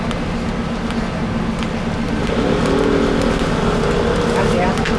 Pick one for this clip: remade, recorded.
recorded